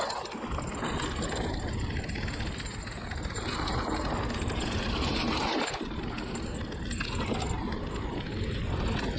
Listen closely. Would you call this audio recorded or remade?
recorded